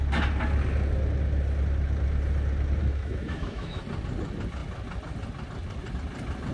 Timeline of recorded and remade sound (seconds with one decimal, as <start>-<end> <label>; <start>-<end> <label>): 0.0-2.8 recorded; 2.8-3.8 remade; 3.8-6.5 recorded